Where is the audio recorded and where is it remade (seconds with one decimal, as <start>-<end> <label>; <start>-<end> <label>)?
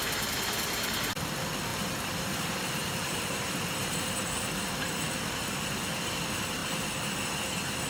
0.0-1.7 recorded; 1.7-4.2 remade; 4.2-7.9 recorded